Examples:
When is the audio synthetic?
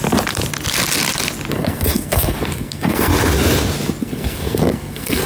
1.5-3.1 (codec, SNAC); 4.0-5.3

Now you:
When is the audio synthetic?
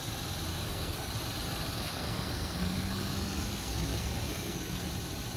0.5-1.1 (codec, SNAC); 1.7-4.9